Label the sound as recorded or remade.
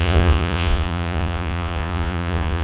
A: remade